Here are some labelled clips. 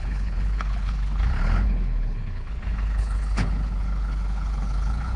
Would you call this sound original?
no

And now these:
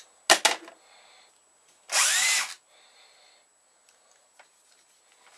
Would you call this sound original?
yes